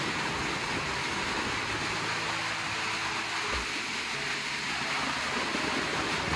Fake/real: real